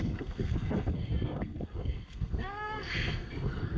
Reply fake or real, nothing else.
fake